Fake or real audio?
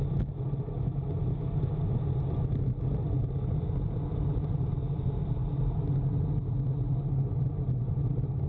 real